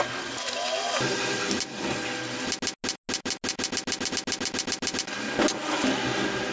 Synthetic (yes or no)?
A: no